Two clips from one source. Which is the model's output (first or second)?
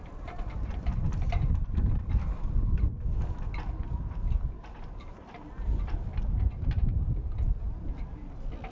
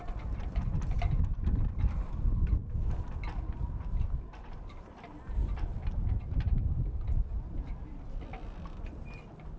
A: second